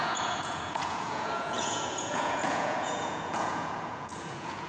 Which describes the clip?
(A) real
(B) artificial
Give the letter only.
B